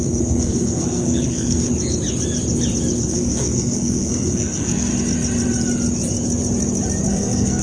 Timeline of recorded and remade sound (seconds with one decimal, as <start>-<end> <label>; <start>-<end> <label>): 0.0-1.7 remade; 1.7-3.0 recorded; 3.0-4.9 remade; 4.9-7.1 recorded; 7.1-7.6 remade